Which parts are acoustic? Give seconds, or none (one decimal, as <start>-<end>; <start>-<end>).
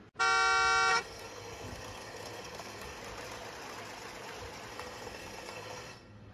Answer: 0.0-0.9; 3.0-4.7